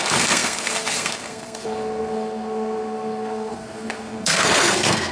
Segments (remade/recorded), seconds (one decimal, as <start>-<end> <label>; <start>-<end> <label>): 0.0-5.1 remade

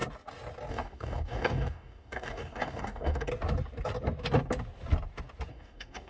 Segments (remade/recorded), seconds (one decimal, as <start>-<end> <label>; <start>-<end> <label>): 0.0-0.7 recorded; 0.7-3.3 remade; 3.3-5.5 recorded; 5.5-6.1 remade

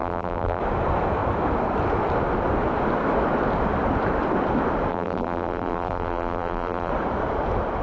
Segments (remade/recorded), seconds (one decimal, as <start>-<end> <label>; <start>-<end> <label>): 0.0-0.6 remade; 0.6-4.9 recorded; 4.9-6.9 remade; 6.9-7.8 recorded

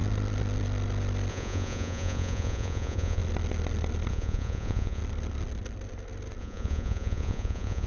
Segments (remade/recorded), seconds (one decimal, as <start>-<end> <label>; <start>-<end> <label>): 0.0-1.3 recorded; 1.3-3.2 remade; 3.2-4.1 recorded; 4.1-5.0 remade; 5.0-6.4 recorded; 6.4-7.9 remade

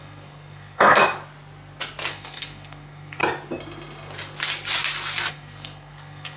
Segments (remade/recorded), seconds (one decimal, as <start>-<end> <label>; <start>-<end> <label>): 0.0-1.0 remade; 1.0-2.1 recorded; 2.1-3.2 remade; 3.2-5.3 recorded; 5.3-6.4 remade

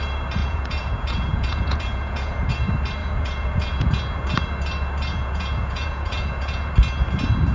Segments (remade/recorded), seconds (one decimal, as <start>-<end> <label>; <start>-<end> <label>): 0.0-0.4 recorded; 0.4-2.5 remade; 2.5-3.0 recorded; 3.0-3.9 remade; 3.9-5.1 recorded; 5.1-6.6 remade; 6.6-7.5 recorded

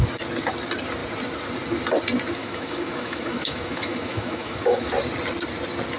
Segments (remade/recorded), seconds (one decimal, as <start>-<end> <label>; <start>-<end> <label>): 0.0-2.4 recorded; 2.4-4.9 remade; 4.9-6.0 recorded